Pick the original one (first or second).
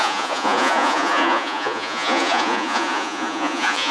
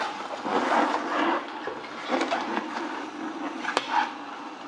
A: second